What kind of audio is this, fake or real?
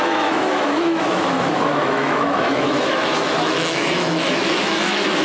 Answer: fake